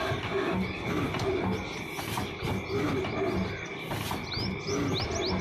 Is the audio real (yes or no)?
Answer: yes